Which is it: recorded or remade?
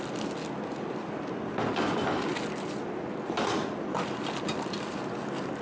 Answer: recorded